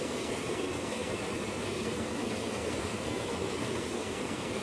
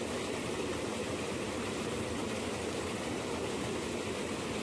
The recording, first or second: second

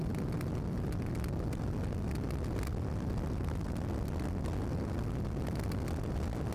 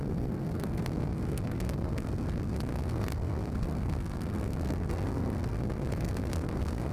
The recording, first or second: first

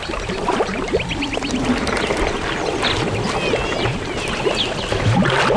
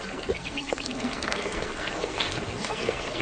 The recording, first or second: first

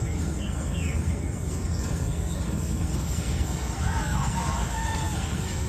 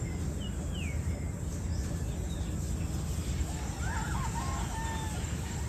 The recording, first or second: second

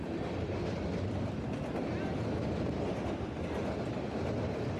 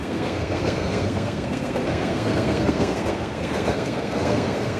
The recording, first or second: first